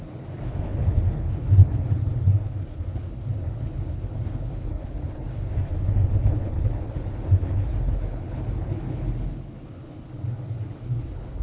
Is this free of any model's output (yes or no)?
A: no